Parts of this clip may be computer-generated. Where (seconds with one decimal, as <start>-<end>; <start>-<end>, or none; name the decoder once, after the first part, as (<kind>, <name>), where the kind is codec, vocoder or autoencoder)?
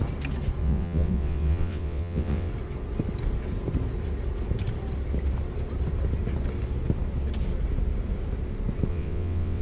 0.6-2.5 (vocoder, WaveNeXt); 8.9-9.6